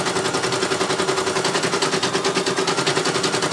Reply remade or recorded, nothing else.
recorded